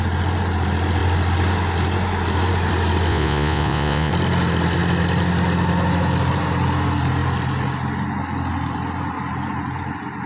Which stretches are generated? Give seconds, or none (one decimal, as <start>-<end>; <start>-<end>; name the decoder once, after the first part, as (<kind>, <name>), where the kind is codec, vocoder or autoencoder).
3.1-4.1 (vocoder, Vocos)